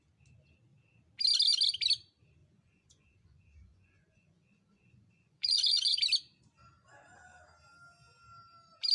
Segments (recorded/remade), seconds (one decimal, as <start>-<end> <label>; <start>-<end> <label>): 0.0-2.4 recorded; 2.4-6.0 remade; 6.0-8.9 recorded